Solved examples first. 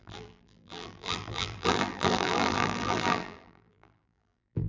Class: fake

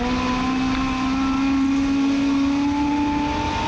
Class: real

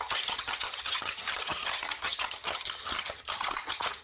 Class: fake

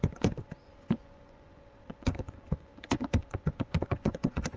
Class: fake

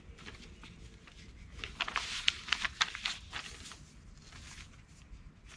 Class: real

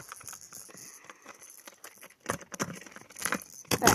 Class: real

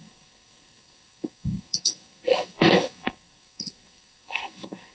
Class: fake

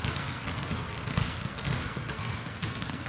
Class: fake